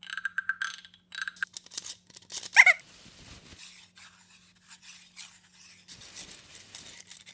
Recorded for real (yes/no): yes